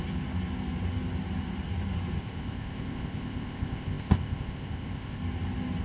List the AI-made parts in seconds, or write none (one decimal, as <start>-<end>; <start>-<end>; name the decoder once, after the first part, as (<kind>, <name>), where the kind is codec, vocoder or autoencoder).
2.2-5.2 (codec, ZipCodec)